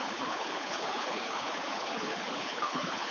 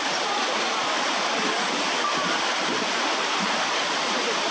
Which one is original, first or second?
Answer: second